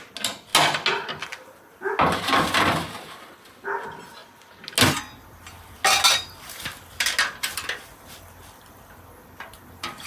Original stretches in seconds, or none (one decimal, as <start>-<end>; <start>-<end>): 0.0-10.1